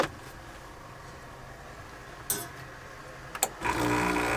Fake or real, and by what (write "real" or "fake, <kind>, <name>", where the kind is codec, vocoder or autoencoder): real